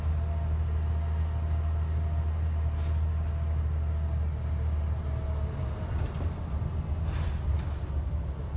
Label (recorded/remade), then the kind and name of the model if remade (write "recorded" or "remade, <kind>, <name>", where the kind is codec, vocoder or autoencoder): recorded